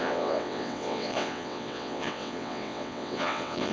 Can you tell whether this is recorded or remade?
remade